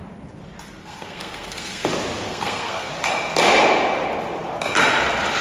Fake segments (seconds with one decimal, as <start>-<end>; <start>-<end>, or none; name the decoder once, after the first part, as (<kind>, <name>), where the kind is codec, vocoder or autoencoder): 0.8-1.9 (codec, SNAC); 2.3-2.9

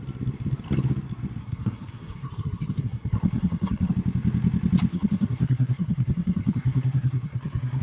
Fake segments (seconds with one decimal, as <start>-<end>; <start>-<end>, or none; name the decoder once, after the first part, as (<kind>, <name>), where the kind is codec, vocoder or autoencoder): 1.4-3.9 (codec, SNAC); 4.9-7.8

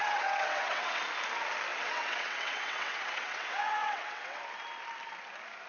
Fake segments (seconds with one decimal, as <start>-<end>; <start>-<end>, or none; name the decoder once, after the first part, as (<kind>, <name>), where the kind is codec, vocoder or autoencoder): 0.0-1.0 (vocoder, WaveNeXt); 1.7-4.4

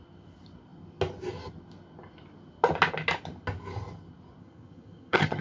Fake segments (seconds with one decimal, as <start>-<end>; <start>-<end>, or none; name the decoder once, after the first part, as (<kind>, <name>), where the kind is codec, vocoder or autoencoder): 4.4-5.4 (vocoder, HiFi-GAN)

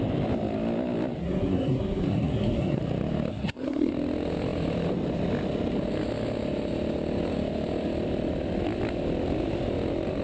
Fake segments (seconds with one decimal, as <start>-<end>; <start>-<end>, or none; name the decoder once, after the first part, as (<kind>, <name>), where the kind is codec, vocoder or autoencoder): 1.2-2.8 (codec, SNAC); 3.3-3.9

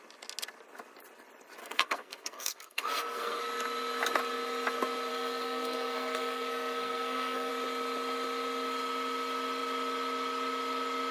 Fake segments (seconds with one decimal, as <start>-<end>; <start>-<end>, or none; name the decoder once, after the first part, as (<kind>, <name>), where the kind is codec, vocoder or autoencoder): 1.6-3.4 (codec, SNAC); 5.1-7.5

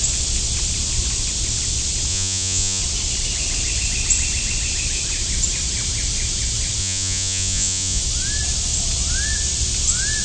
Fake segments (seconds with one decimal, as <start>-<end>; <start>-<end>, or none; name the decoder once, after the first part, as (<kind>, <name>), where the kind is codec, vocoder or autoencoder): 2.1-2.8 (vocoder, Vocos); 6.8-8.0

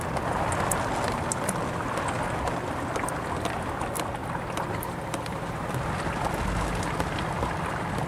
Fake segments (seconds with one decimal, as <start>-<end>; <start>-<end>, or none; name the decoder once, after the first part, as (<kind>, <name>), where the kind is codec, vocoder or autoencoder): 4.2-5.7 (vocoder, BigVGAN v2)